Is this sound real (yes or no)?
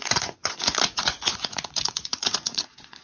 no